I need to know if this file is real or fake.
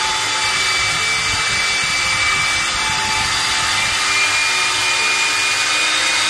real